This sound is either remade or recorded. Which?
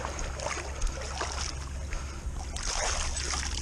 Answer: recorded